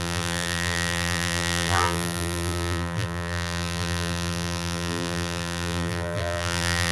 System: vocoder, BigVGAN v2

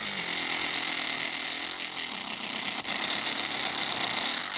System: none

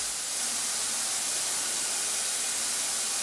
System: none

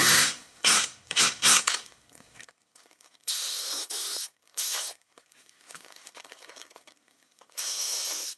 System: codec, SNAC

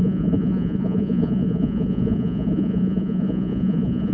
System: vocoder, Vocos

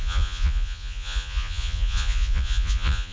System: vocoder, Vocos